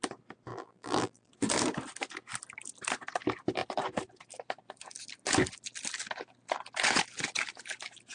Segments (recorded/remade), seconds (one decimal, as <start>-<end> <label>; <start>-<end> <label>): 0.0-0.5 recorded; 0.5-1.3 remade; 1.3-8.1 recorded